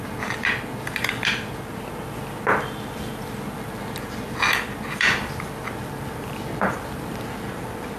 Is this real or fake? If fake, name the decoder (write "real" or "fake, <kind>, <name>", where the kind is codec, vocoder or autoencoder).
real